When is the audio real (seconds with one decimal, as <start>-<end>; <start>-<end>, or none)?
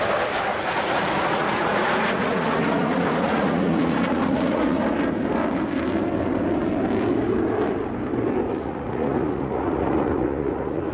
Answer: 0.0-0.5; 4.8-8.5